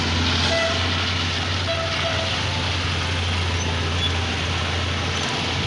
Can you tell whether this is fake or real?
real